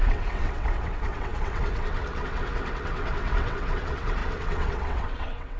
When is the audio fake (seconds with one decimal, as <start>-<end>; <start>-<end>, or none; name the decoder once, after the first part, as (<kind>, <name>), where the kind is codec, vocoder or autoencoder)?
0.0-5.6 (vocoder, WaveNeXt)